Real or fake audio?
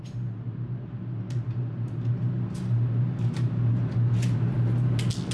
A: real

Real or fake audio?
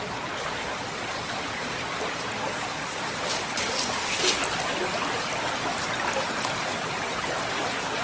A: real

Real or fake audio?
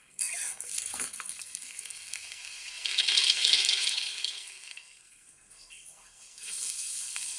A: fake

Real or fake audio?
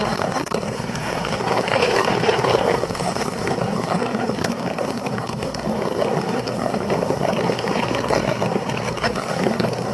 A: fake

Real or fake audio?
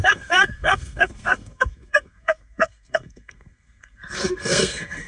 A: fake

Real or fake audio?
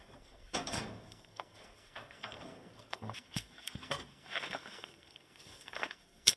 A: fake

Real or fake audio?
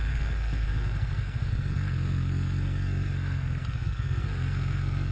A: fake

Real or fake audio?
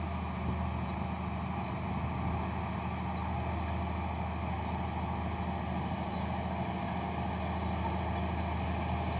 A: real